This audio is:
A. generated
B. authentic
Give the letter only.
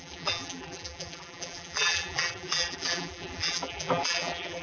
A